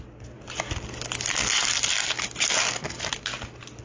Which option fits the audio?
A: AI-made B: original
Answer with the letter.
B